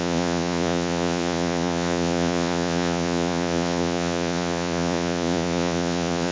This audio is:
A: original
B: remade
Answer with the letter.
B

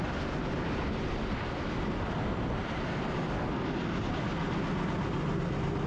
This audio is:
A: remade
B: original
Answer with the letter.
B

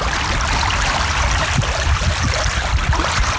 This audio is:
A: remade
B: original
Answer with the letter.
A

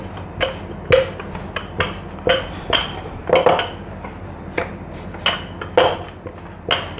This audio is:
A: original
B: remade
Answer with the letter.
A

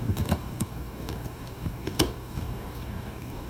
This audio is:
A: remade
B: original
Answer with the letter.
A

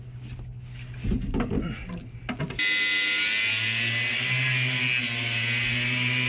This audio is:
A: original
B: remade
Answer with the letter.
A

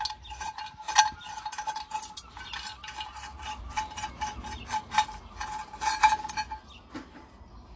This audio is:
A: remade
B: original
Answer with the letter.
B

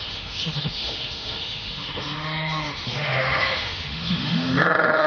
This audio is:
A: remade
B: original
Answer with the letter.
A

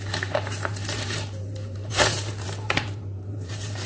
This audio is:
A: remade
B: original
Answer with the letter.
A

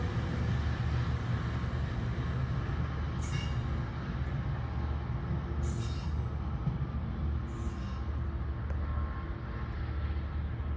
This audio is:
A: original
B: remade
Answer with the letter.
A